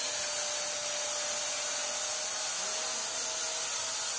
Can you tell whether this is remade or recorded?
recorded